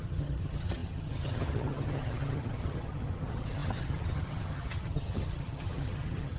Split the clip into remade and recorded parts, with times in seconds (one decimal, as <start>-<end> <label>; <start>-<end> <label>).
0.0-6.4 remade